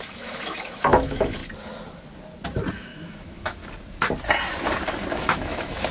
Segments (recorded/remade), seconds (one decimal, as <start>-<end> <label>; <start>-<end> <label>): 0.0-1.4 remade; 1.4-2.7 recorded; 2.7-3.6 remade; 3.6-5.1 recorded; 5.1-5.9 remade